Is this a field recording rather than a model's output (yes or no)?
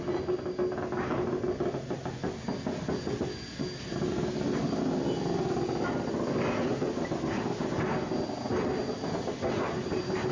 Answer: yes